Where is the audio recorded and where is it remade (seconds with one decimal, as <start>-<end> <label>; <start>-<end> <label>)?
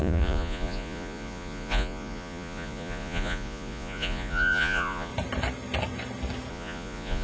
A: 0.0-5.1 remade; 5.1-6.5 recorded; 6.5-7.2 remade